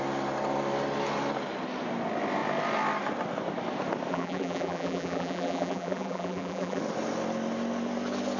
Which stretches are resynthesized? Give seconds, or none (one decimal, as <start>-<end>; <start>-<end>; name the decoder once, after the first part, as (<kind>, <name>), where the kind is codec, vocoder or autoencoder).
4.1-6.8 (vocoder, BigVGAN v2)

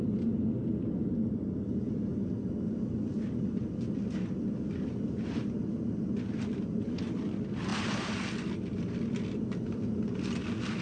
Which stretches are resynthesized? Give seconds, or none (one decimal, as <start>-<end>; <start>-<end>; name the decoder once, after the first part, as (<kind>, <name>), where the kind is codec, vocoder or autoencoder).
none

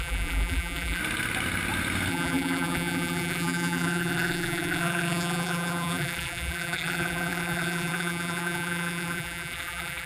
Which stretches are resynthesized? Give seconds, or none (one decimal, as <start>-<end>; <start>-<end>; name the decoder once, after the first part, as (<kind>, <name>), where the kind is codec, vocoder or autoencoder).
0.0-1.0 (vocoder, BigVGAN v2); 2.1-10.1

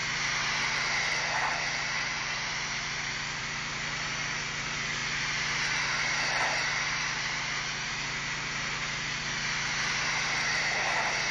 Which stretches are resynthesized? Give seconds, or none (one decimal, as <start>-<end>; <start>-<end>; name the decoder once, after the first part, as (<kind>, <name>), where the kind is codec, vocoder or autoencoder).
none

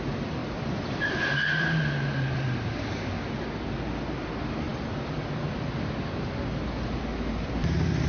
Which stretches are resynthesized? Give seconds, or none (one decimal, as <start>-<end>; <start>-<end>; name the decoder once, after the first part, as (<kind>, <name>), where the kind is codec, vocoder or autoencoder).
0.4-2.8 (vocoder, BigVGAN v2)